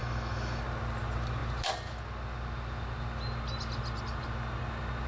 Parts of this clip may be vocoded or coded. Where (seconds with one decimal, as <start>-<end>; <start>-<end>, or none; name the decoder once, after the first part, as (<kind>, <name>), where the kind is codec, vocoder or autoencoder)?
0.0-0.6 (autoencoder, DAC-VAE)